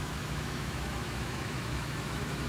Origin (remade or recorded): remade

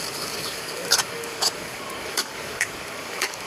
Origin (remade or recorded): remade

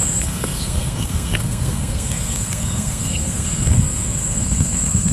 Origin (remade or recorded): remade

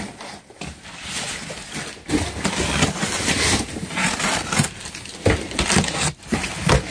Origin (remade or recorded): recorded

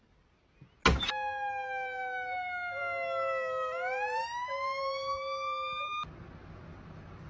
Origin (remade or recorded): recorded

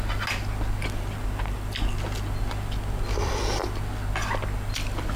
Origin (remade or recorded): recorded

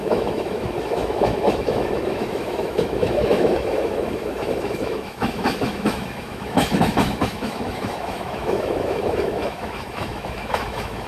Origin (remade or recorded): remade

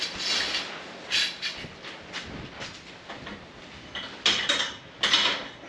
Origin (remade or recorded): recorded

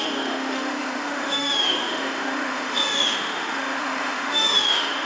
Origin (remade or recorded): remade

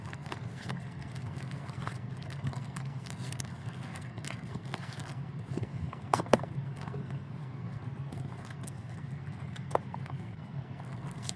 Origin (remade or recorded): remade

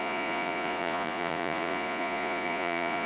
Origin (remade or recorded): remade